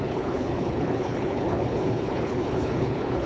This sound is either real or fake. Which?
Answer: fake